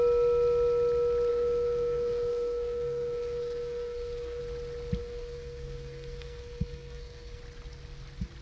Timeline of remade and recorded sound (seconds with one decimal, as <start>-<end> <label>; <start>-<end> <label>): 0.0-1.3 recorded; 1.3-4.4 remade; 4.4-5.0 recorded; 5.0-7.4 remade; 7.4-8.4 recorded